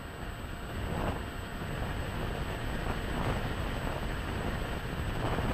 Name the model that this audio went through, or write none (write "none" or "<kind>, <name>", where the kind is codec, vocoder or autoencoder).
none